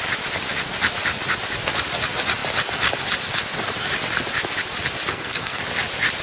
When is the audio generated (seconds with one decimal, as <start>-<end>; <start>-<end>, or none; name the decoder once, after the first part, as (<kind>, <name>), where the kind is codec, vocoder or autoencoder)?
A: 5.1-5.6 (codec, SNAC)